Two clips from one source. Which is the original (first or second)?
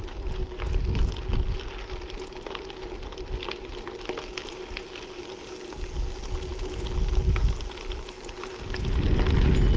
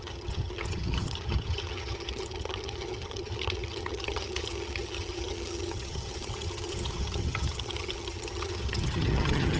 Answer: first